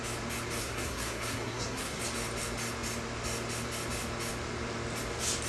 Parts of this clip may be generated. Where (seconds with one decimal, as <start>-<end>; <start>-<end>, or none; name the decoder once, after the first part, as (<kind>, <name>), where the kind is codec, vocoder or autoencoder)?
0.6-2.0 (codec, SNAC)